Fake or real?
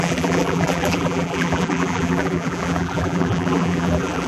fake